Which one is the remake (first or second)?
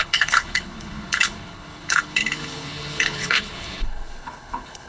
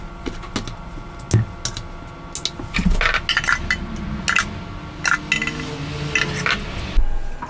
first